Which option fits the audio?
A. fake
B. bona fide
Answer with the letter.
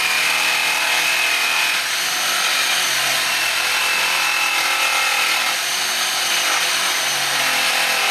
B